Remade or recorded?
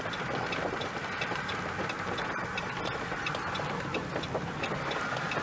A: remade